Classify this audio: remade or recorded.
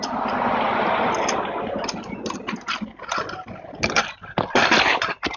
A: recorded